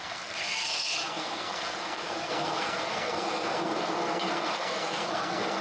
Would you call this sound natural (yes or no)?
no